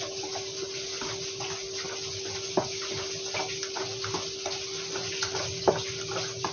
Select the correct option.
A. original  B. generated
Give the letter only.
A